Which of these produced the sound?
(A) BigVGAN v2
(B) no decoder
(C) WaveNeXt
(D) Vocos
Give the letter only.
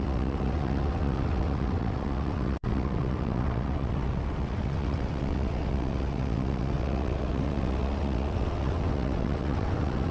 C